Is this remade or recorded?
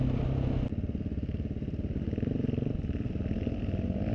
recorded